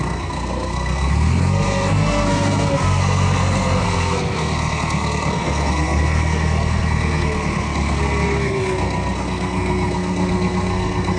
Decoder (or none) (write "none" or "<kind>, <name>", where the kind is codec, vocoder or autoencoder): codec, SNAC